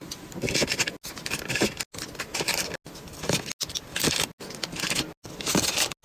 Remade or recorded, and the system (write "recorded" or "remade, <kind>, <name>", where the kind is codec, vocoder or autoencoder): recorded